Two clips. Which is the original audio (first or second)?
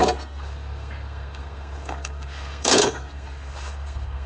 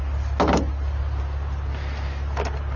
second